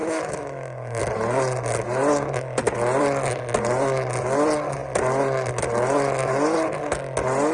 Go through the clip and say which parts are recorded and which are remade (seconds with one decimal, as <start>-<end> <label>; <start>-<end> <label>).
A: 0.0-1.0 remade; 1.0-7.5 recorded